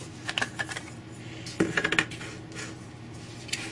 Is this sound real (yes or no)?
yes